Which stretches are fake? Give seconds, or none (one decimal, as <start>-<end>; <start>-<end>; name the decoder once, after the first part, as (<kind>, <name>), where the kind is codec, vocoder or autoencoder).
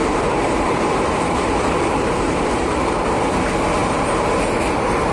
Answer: 0.0-3.1 (vocoder, BigVGAN v2); 3.8-4.5